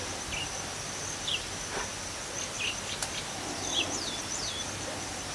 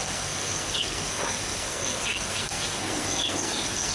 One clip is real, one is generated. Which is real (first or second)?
first